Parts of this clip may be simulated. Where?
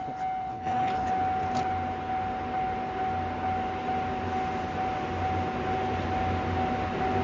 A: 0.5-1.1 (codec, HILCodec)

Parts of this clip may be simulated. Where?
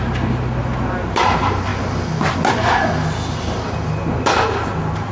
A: none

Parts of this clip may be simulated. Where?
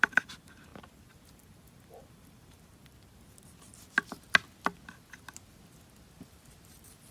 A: 0.0-0.7 (vocoder, BigVGAN v2); 2.1-2.8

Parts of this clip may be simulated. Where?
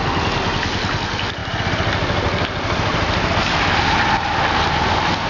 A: none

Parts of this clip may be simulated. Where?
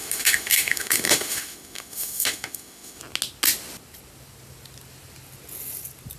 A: 0.0-3.0 (autoencoder, DAC-VAE)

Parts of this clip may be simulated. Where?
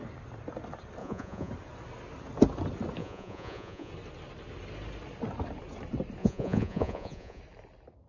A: 1.0-1.5 (vocoder, Vocos); 3.0-3.9; 6.2-7.4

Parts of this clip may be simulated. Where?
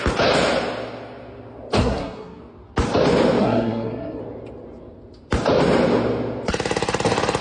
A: 1.8-2.4 (codec, SNAC); 3.4-4.2